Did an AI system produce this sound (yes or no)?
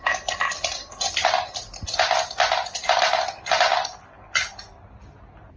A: no